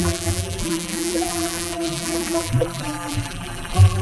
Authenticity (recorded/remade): remade